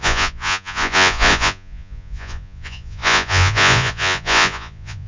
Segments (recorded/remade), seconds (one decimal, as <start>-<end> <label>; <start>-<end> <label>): 0.0-5.1 remade

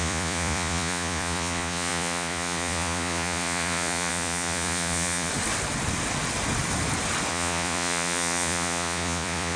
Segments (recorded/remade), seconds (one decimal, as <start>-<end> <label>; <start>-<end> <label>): 0.0-5.3 remade; 5.3-7.3 recorded; 7.3-9.6 remade

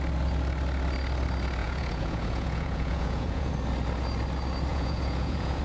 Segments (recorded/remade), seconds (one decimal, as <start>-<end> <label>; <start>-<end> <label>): 0.0-1.6 recorded; 1.6-3.5 remade; 3.5-4.7 recorded; 4.7-5.6 remade

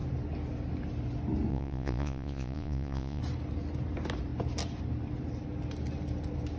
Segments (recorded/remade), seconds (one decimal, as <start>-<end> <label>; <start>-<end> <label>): 0.0-1.5 recorded; 1.5-3.2 remade; 3.2-6.6 recorded

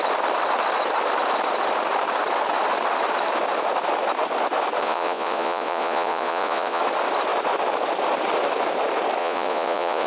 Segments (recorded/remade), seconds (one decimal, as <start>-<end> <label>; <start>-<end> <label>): 0.0-4.8 recorded; 4.8-6.8 remade; 6.8-9.2 recorded; 9.2-10.1 remade

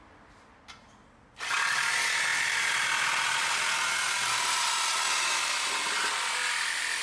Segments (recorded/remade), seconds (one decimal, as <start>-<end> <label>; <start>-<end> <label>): 0.0-7.0 recorded